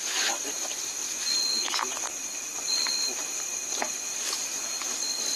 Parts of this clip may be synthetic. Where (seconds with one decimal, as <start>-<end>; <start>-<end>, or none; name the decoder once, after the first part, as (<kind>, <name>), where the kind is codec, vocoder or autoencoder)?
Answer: 1.0-4.2 (vocoder, BigVGAN v2)